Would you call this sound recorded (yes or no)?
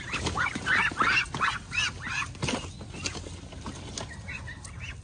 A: yes